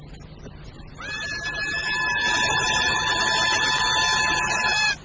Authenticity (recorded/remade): recorded